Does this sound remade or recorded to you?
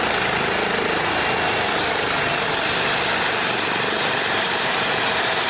recorded